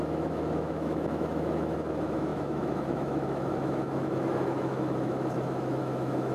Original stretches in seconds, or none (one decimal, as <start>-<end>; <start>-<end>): none